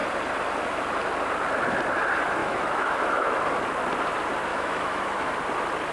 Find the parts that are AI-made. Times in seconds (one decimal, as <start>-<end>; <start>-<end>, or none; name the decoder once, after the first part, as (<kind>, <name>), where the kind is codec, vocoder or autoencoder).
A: 2.4-3.4 (autoencoder, DAC-VAE); 4.5-5.3